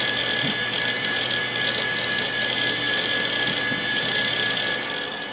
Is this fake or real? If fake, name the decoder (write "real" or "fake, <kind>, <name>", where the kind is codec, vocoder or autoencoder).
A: real